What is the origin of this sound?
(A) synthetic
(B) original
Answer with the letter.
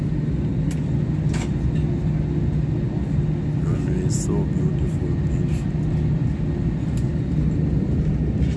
B